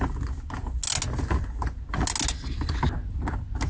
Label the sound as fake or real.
real